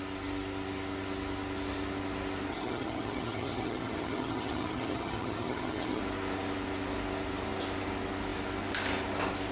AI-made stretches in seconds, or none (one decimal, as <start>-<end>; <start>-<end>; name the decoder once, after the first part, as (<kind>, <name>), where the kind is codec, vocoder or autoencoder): 2.5-6.0 (vocoder, HiFi-GAN)